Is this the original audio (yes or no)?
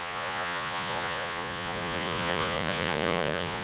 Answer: no